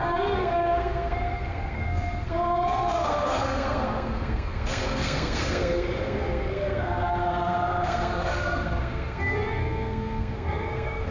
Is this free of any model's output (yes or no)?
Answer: no